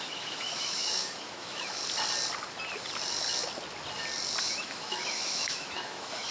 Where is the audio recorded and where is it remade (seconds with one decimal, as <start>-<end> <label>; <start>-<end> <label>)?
0.0-1.8 remade; 1.8-4.4 recorded; 4.4-6.3 remade